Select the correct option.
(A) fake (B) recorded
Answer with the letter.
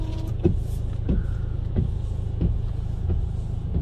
A